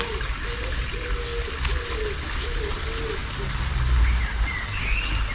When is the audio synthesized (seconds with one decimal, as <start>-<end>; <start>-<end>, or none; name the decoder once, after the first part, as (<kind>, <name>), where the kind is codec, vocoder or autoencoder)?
none